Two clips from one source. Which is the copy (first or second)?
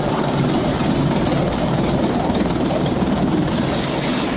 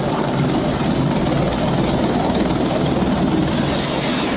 first